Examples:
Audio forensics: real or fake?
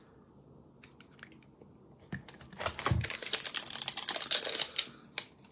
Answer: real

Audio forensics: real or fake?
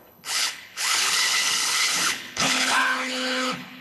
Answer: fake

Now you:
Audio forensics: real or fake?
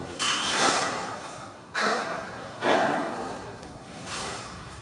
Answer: fake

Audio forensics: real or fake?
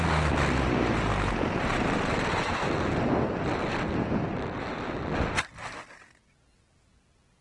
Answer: real